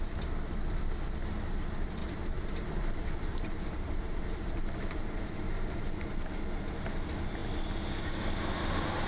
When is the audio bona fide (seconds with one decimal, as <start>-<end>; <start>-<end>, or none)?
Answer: 0.0-2.0; 6.6-9.1